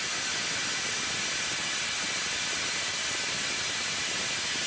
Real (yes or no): yes